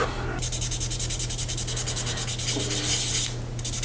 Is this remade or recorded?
recorded